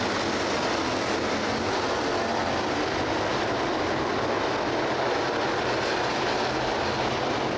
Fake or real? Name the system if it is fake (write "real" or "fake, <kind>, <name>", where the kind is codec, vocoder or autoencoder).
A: real